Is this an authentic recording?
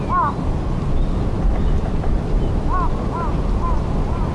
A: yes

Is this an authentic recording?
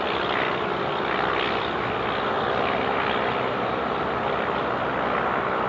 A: yes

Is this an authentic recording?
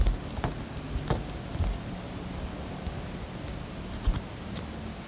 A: yes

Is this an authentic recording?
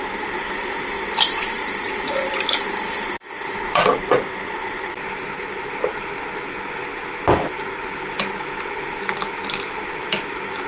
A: yes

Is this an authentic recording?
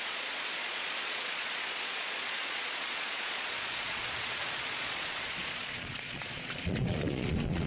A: no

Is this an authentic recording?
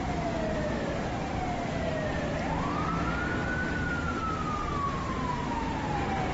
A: yes